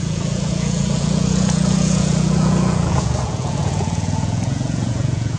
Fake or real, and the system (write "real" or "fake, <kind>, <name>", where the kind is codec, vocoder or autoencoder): fake, vocoder, Vocos